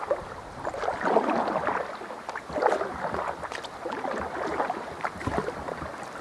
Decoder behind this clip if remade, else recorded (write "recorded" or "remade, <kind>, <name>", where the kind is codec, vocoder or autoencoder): recorded